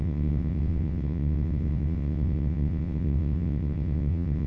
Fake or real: fake